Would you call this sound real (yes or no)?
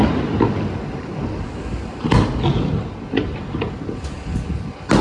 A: yes